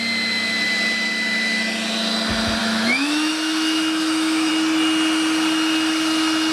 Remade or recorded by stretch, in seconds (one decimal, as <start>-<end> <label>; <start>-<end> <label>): 0.0-2.6 recorded; 2.6-4.5 remade; 4.5-6.5 recorded